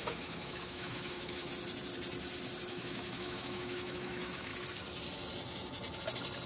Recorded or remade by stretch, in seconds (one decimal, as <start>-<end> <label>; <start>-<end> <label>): 0.0-1.5 remade; 1.5-2.7 recorded; 2.7-4.5 remade; 4.5-6.5 recorded